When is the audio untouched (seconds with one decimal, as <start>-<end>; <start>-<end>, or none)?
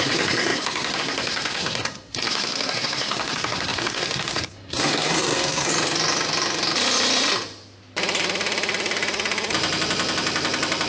5.7-10.9